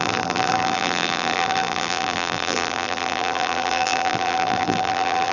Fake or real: fake